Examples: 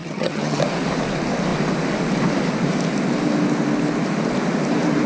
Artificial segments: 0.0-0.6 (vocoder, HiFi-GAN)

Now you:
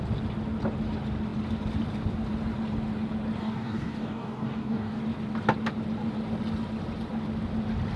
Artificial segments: 3.4-5.0 (codec, DAC)